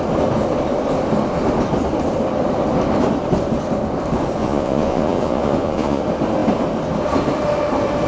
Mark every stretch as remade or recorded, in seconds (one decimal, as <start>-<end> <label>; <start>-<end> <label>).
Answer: 0.0-4.4 recorded; 4.4-6.0 remade; 6.0-8.1 recorded